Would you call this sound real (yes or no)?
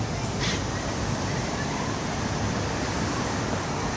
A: no